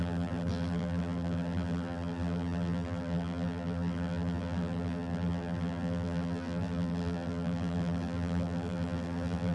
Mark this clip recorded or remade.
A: remade